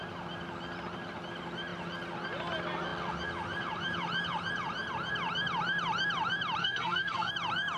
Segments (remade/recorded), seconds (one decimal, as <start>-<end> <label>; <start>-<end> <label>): 0.0-6.6 recorded; 6.6-7.3 remade; 7.3-7.8 recorded